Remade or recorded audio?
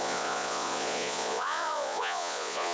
remade